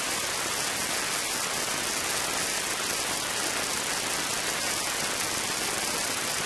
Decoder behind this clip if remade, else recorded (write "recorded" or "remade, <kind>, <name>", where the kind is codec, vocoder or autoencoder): recorded